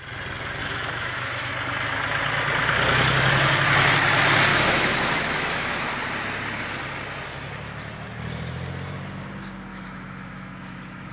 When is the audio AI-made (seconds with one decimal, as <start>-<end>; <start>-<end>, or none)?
0.6-1.5; 4.5-5.9; 9.7-11.1